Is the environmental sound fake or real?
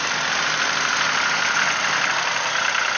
real